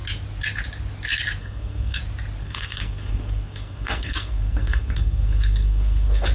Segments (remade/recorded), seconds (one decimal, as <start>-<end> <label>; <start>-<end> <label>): 0.0-1.4 recorded; 1.4-2.0 remade; 2.0-2.4 recorded; 2.4-6.3 remade